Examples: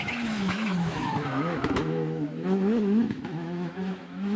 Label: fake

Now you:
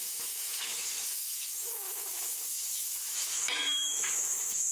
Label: fake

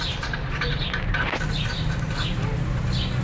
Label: real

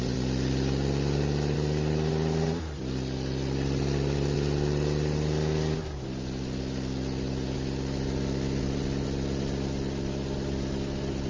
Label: real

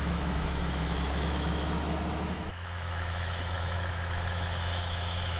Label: fake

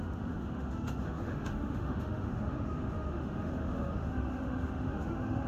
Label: fake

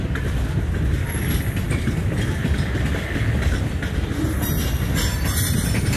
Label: real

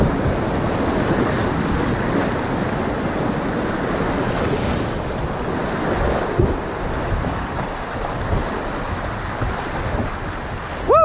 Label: real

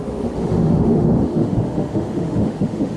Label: fake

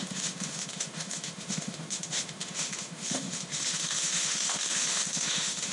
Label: fake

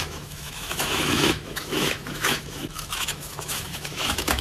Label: fake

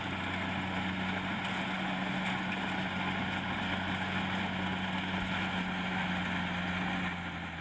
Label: real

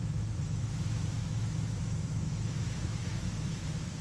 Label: fake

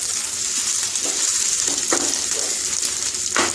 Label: real